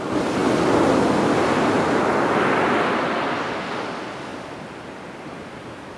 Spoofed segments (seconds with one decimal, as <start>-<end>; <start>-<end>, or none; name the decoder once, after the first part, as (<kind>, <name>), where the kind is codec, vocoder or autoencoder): none